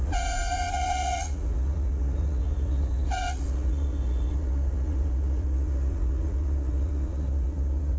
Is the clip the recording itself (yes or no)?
no